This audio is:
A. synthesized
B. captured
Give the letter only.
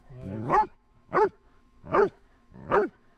A